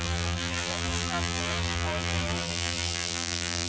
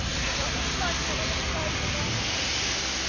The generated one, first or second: first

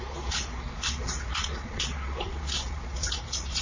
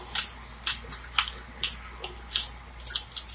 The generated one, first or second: first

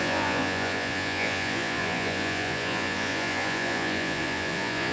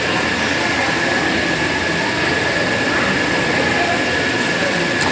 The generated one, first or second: first